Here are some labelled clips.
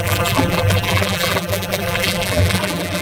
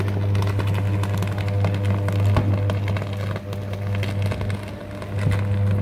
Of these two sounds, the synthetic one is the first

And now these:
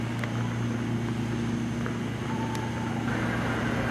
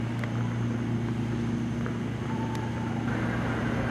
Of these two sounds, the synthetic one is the second